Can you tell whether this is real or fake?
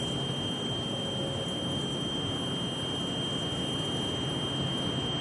real